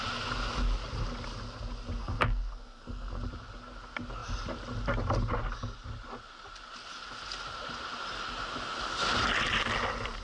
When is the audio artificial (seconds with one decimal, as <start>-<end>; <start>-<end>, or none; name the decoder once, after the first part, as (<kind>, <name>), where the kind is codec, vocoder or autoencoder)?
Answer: 2.0-3.2 (codec, SNAC)